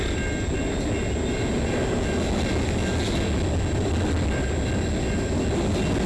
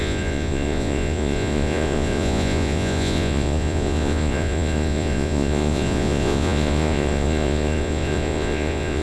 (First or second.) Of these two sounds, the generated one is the second